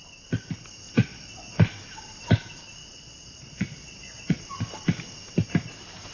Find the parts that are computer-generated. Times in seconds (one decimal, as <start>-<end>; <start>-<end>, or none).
1.0-1.5; 2.8-4.4